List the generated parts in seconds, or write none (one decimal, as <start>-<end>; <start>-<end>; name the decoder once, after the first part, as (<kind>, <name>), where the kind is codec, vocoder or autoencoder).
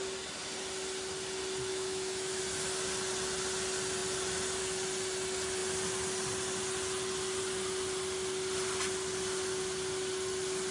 1.7-2.4 (autoencoder, DAC-VAE)